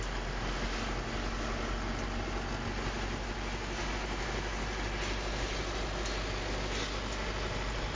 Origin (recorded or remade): recorded